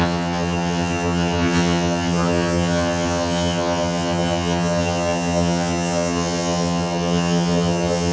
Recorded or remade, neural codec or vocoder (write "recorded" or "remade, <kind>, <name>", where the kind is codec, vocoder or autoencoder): remade, vocoder, HiFi-GAN